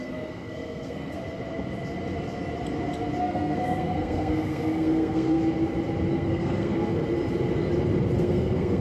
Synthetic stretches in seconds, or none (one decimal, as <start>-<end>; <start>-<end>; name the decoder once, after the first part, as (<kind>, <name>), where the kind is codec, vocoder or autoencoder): 0.0-1.2 (codec, SNAC); 3.2-5.4; 6.1-7.0; 8.2-8.8

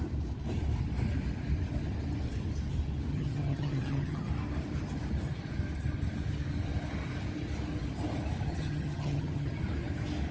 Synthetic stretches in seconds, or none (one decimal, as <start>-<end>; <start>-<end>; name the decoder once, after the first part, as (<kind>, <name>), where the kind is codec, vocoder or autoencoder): 3.1-4.3 (vocoder, HiFi-GAN); 8.5-9.6

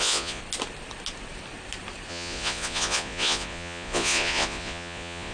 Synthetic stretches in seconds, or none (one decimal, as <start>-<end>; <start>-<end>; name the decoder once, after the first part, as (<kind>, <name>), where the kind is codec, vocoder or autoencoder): 0.0-0.4 (vocoder, Vocos); 2.1-5.3